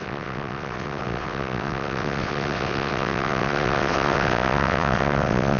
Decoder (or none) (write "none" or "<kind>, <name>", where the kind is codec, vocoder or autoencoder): vocoder, WaveNeXt